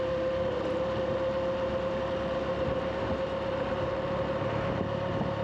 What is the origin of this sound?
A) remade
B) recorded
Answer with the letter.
B